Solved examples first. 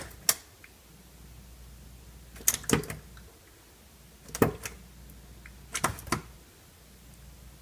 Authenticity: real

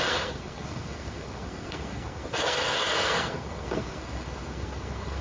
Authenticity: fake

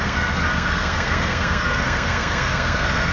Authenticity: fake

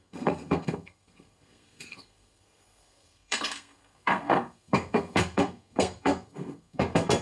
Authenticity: fake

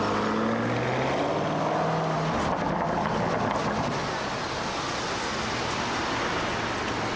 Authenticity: real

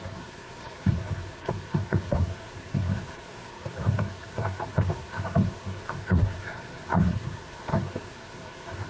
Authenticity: fake